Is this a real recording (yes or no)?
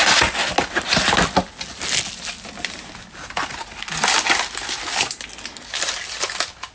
yes